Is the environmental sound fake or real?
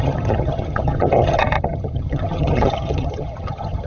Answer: fake